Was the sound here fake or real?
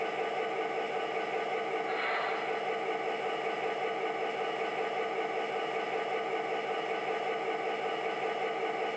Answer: real